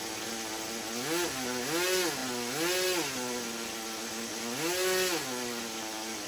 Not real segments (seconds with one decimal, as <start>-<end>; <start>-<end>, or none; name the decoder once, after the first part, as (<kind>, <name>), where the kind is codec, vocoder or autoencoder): none